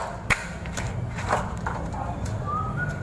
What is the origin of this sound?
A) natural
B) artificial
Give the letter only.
B